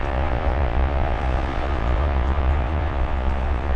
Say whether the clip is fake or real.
fake